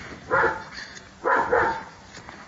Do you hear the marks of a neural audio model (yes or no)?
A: no